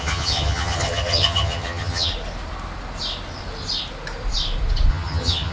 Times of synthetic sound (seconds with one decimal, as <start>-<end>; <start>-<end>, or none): 0.0-2.1; 4.9-5.5